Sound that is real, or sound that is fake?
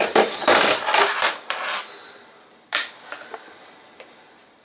fake